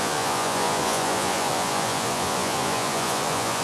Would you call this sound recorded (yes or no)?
no